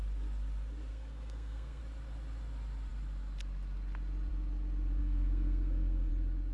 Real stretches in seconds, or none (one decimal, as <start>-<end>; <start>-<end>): 0.0-0.9; 1.8-5.0; 6.1-6.5